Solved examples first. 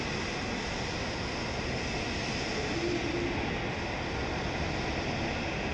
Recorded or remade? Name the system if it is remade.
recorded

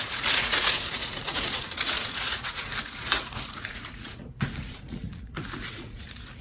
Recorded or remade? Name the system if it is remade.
remade, vocoder, Vocos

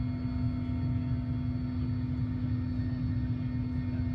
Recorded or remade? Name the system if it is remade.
recorded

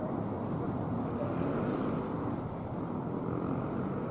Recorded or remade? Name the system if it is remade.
recorded